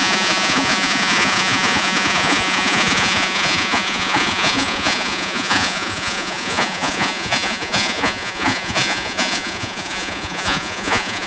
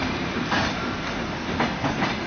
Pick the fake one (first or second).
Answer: first